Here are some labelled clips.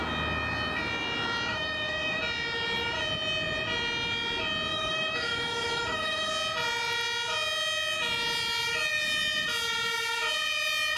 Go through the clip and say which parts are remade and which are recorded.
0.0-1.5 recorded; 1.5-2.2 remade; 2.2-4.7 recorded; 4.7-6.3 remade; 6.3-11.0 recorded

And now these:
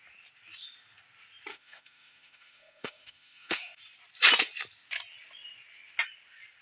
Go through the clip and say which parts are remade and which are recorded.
0.0-1.5 recorded; 1.5-3.8 remade; 3.8-6.6 recorded

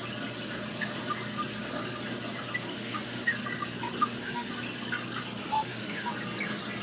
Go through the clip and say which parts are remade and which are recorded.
0.0-2.7 recorded; 2.7-3.3 remade; 3.3-4.0 recorded; 4.0-4.5 remade; 4.5-5.4 recorded; 5.4-6.1 remade; 6.1-6.8 recorded

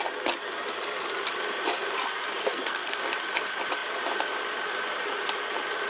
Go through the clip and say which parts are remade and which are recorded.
0.0-2.4 recorded; 2.4-3.0 remade; 3.0-5.9 recorded

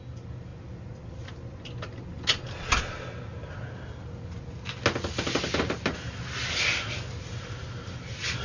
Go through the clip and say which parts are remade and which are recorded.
0.0-8.4 recorded